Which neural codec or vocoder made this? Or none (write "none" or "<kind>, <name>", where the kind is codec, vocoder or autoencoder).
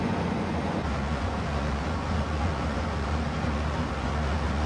vocoder, Vocos